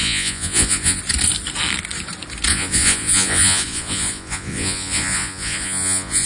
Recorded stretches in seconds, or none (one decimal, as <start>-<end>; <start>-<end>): 1.0-2.5